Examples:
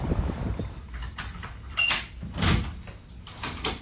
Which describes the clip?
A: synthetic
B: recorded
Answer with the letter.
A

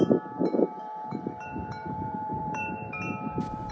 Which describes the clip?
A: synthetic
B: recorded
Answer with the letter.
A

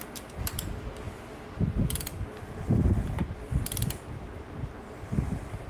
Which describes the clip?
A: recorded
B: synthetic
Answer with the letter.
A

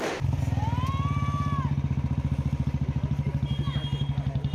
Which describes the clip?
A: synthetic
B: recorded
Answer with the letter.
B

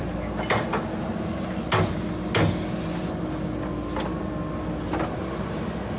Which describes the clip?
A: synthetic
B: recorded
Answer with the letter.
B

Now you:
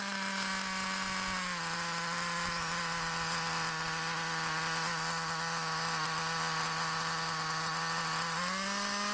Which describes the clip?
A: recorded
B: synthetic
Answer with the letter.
A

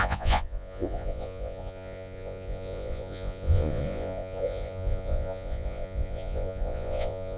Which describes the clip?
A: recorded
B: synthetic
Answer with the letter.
B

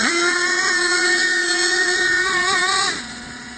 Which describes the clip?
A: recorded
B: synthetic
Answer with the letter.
B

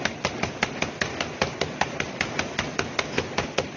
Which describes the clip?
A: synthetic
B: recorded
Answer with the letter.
B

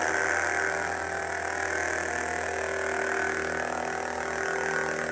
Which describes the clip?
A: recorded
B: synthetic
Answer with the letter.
A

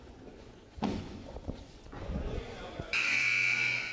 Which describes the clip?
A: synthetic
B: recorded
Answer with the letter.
A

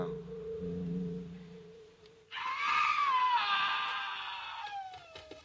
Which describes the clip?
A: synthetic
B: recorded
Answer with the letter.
B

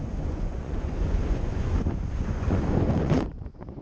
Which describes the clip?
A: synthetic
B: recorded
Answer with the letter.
A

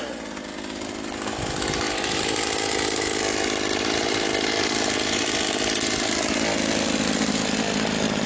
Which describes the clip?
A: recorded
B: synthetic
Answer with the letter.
A